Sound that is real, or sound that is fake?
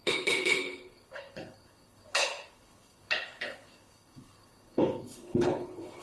fake